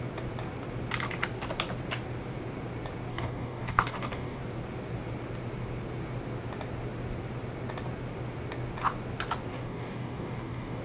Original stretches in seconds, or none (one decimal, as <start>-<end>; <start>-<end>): 0.0-3.1; 4.4-9.5